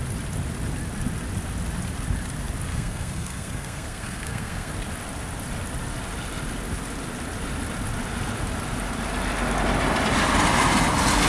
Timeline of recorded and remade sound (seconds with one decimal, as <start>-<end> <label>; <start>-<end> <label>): 0.0-2.7 recorded; 2.7-4.7 remade; 4.7-11.3 recorded